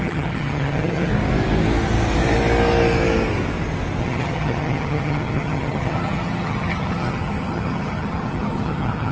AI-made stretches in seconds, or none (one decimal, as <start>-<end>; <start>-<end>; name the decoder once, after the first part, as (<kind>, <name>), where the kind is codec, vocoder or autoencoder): 0.0-1.1 (vocoder, HiFi-GAN); 4.0-9.1